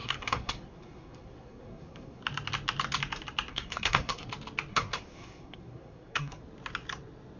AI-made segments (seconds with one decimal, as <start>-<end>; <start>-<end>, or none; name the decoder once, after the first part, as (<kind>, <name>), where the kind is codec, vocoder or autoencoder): 0.0-2.2 (codec, SNAC); 3.5-4.3; 4.7-6.4